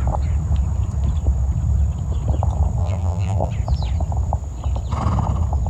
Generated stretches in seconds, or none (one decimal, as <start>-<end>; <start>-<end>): 2.8-3.5